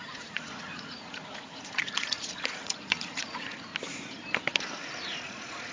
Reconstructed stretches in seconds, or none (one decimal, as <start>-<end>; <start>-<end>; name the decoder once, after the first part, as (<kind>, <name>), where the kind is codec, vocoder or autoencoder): 0.0-3.7 (vocoder, Vocos); 4.7-5.7